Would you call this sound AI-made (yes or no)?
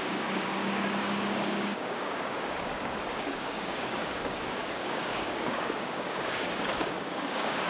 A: yes